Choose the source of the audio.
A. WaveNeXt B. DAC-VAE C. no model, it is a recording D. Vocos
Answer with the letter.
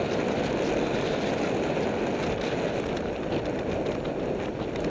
C